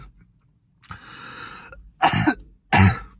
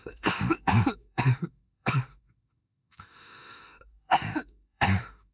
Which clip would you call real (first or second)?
first